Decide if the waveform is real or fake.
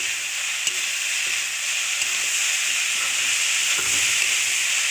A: real